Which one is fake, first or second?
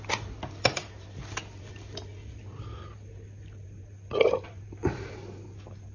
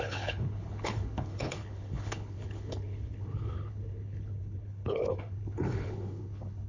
second